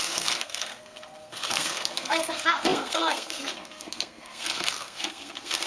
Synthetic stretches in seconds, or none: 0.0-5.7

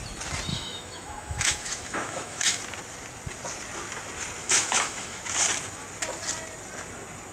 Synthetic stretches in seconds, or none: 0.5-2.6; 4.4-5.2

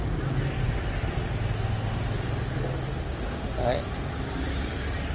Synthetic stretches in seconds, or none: none